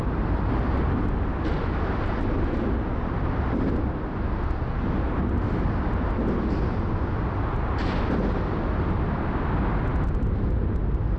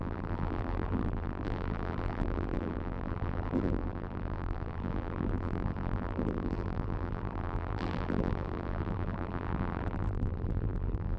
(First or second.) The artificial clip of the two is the second